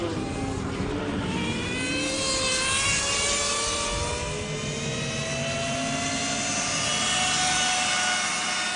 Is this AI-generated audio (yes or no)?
no